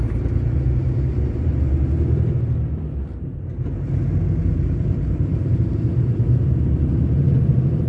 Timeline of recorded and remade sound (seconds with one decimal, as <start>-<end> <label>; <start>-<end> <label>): 0.0-1.5 remade; 1.5-4.4 recorded; 4.4-7.9 remade